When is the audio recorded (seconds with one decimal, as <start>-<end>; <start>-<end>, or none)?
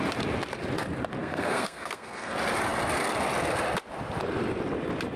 0.0-1.2; 2.3-5.2